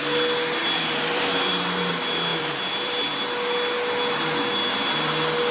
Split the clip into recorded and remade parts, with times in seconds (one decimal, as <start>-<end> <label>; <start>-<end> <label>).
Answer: 0.0-0.6 recorded; 0.6-1.9 remade; 1.9-2.3 recorded; 2.3-3.0 remade; 3.0-5.5 recorded